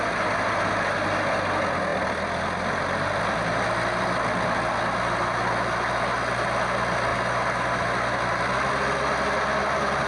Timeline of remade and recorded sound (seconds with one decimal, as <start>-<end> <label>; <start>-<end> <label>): 0.0-10.1 recorded